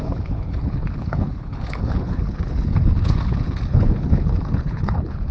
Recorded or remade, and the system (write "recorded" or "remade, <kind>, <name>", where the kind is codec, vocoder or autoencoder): remade, codec, HILCodec